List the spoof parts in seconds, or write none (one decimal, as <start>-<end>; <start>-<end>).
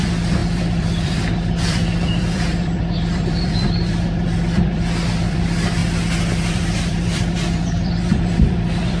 0.0-5.8; 6.5-9.0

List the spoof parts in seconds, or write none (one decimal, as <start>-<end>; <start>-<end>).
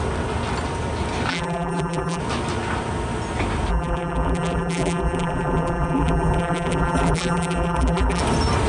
1.3-2.2; 3.7-8.2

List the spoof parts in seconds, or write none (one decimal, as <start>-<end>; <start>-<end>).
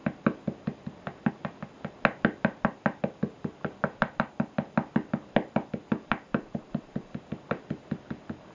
6.3-7.2